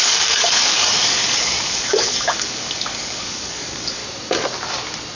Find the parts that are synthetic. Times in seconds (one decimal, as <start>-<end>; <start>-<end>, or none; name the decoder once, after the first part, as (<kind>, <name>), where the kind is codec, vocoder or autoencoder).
0.0-4.0 (codec, DAC)